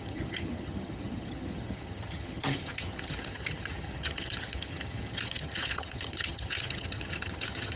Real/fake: fake